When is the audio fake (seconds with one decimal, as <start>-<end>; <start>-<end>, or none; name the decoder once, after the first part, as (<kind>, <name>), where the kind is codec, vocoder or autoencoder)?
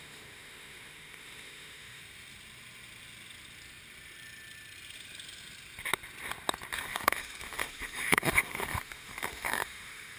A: 0.0-2.0 (autoencoder, DAC-VAE); 6.8-10.2